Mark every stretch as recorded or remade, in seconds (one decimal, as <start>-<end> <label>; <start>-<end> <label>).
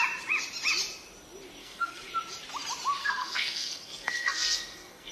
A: 0.0-1.6 recorded; 1.6-2.1 remade; 2.1-3.0 recorded; 3.0-5.1 remade